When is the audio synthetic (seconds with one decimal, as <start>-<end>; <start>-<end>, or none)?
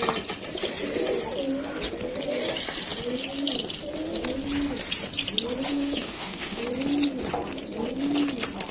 5.7-6.6